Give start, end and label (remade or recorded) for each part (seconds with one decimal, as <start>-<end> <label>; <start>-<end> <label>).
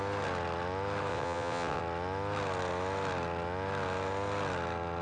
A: 0.0-1.1 recorded; 1.1-1.8 remade; 1.8-5.0 recorded